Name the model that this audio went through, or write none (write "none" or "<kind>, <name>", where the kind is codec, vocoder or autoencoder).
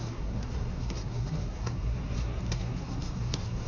codec, SNAC